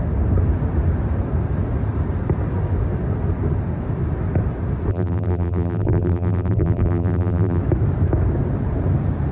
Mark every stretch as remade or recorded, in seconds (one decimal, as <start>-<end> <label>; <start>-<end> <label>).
0.0-4.9 recorded; 4.9-7.6 remade; 7.6-9.3 recorded